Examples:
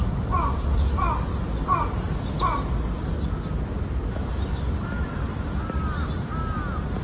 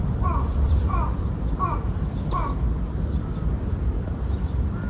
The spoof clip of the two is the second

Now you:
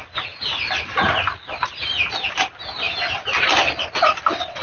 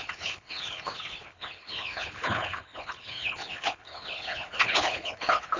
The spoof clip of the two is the second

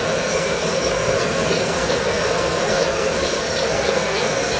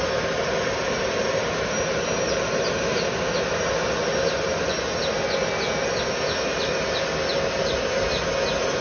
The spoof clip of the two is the first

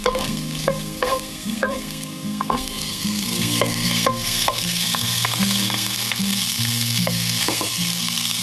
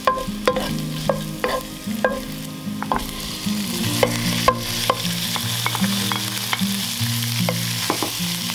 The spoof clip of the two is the first